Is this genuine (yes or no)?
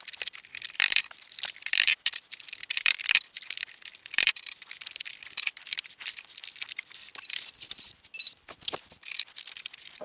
no